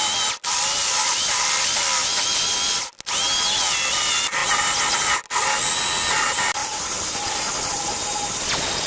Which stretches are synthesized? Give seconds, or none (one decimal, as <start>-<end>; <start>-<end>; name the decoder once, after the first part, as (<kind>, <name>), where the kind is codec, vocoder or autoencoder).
6.6-7.3 (vocoder, BigVGAN v2)